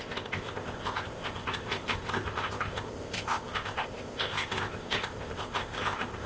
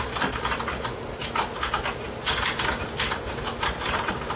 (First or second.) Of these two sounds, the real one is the second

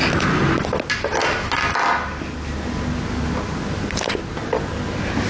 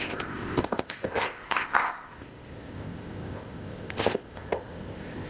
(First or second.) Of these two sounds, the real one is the first